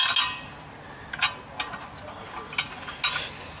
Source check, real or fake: real